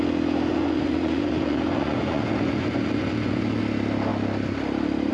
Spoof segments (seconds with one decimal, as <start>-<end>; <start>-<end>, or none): 0.5-3.6